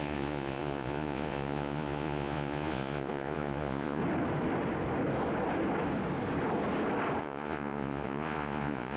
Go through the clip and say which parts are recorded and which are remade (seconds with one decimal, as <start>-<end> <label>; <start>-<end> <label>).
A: 0.0-4.0 remade; 4.0-7.2 recorded; 7.2-9.0 remade